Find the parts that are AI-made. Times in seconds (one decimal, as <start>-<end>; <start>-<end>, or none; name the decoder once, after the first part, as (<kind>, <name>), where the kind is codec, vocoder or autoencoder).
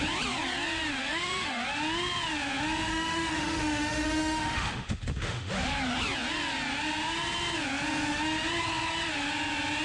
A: 1.0-1.6 (autoencoder, DAC-VAE); 2.9-5.5